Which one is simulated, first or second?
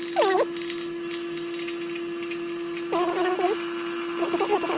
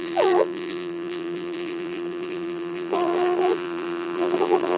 second